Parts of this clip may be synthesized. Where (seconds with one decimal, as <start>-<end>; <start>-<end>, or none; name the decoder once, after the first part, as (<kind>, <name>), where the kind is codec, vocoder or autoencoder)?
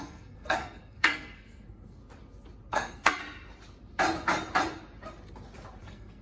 0.0-2.0 (codec, SNAC); 2.7-3.2; 5.8-6.2